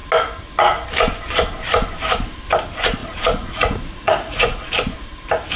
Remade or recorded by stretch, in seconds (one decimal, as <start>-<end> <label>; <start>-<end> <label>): 0.0-3.0 recorded; 3.0-4.6 remade; 4.6-5.6 recorded